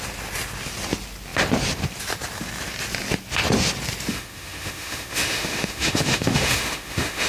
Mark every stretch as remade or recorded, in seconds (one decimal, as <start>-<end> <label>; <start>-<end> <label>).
0.0-4.1 recorded; 4.1-7.3 remade